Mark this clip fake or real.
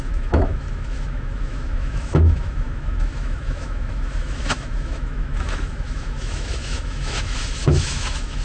fake